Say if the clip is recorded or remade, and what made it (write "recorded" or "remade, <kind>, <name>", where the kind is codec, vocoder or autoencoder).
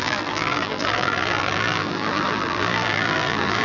remade, vocoder, BigVGAN v2